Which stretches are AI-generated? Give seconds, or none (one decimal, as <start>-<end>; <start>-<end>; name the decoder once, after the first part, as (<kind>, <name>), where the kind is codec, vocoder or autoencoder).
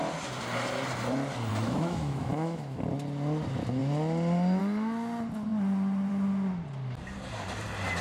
1.5-2.8 (autoencoder, DAC-VAE)